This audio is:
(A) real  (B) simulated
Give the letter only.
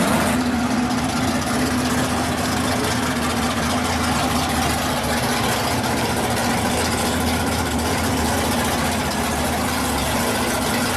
A